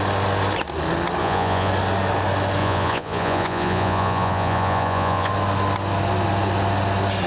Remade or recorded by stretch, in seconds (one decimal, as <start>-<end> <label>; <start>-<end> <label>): 0.0-1.2 recorded; 1.2-1.7 remade; 1.7-2.6 recorded; 2.6-5.3 remade; 5.3-7.3 recorded